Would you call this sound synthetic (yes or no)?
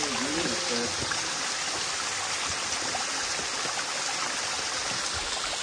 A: no